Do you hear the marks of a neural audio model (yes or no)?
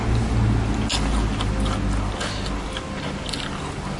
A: no